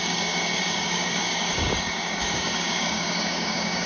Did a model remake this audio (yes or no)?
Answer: yes